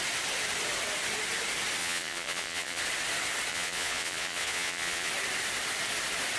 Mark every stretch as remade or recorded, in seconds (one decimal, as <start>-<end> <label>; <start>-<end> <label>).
0.0-1.8 recorded; 1.8-2.8 remade; 2.8-3.5 recorded; 3.5-5.1 remade; 5.1-6.4 recorded